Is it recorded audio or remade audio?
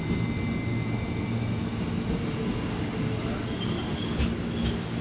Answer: recorded